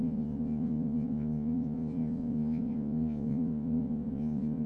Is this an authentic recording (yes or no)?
no